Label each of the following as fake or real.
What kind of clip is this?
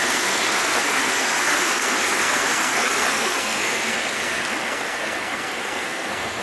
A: fake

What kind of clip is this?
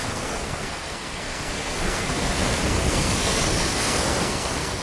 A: fake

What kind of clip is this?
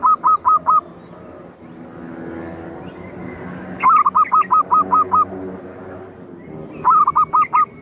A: real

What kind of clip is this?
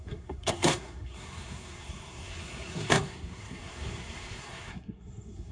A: fake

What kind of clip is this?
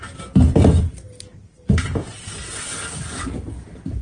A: real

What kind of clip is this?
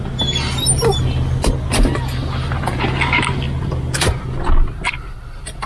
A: real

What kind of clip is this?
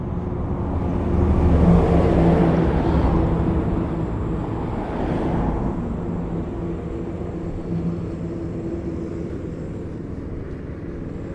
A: real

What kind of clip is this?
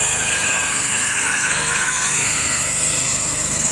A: fake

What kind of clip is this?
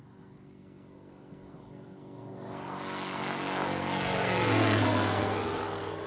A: fake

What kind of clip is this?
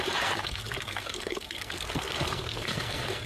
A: fake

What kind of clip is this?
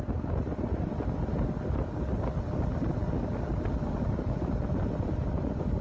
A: real